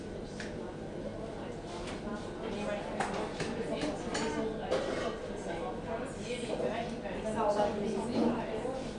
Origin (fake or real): real